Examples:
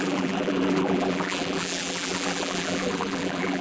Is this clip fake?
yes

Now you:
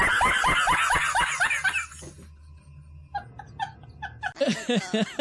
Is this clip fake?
no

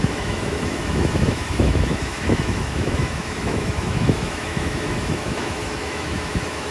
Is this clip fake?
yes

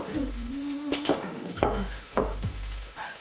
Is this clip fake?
yes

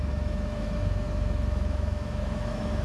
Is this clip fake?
yes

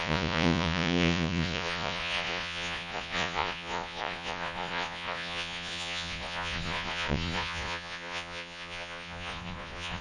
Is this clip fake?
yes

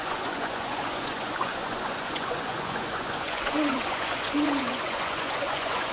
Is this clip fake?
yes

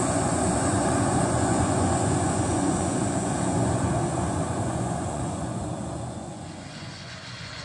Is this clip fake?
yes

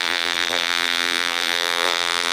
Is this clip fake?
yes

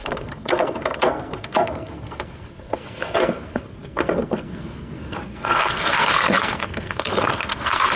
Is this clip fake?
yes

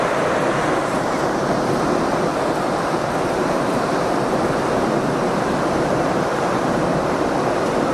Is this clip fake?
yes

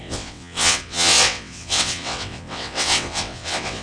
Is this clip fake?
yes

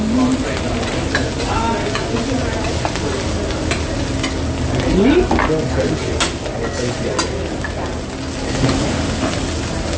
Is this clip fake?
no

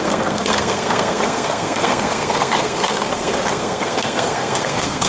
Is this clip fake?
yes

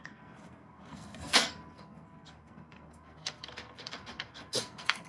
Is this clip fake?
yes